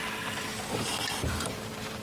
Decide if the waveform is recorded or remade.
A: remade